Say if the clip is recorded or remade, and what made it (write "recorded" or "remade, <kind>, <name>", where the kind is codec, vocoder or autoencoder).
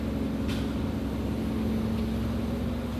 recorded